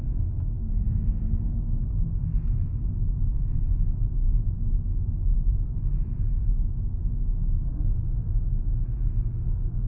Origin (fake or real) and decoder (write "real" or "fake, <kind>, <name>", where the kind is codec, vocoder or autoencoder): real